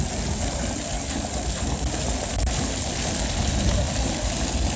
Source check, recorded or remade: recorded